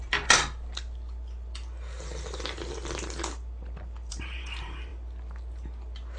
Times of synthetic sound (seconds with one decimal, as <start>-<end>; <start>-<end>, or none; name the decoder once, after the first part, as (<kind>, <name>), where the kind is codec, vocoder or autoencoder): 0.0-0.4 (vocoder, BigVGAN v2); 4.1-4.9